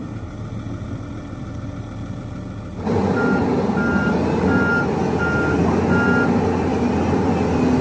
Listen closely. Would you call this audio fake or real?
real